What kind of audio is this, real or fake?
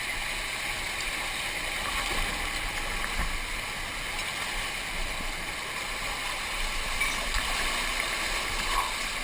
real